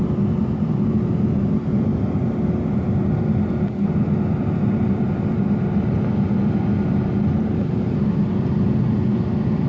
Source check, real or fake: real